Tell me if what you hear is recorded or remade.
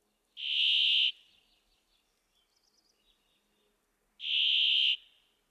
recorded